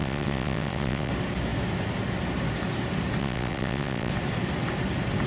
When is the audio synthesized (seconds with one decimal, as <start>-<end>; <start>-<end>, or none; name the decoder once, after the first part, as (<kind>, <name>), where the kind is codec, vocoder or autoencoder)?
0.0-1.1 (vocoder, WaveNeXt); 3.2-4.1